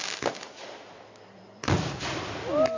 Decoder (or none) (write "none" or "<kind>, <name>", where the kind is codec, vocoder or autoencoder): none